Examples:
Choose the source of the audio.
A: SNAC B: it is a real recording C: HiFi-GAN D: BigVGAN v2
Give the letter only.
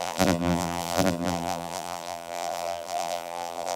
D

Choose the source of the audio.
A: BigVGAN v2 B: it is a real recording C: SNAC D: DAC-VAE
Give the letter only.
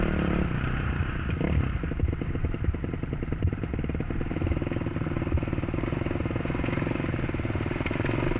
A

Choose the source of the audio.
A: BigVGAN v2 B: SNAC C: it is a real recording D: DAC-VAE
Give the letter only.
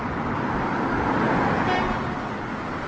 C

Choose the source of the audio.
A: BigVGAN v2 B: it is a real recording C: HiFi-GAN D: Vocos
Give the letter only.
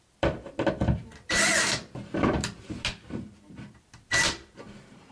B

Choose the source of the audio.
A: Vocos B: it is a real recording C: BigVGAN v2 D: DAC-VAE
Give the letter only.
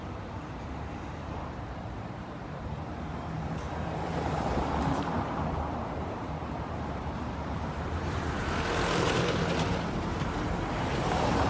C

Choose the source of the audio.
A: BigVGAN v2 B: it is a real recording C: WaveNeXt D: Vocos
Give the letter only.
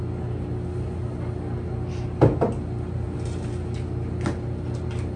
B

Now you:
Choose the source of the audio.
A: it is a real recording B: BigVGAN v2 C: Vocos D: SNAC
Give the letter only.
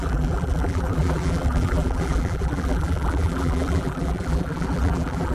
B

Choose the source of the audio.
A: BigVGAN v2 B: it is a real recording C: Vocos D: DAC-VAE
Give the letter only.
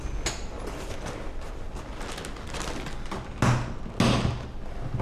B